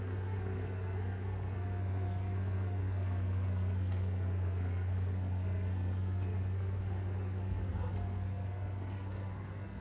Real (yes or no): no